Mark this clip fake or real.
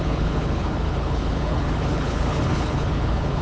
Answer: fake